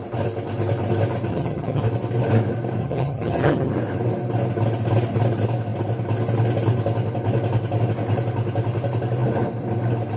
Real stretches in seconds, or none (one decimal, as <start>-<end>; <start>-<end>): 0.0-1.3; 1.8-2.8; 3.7-10.2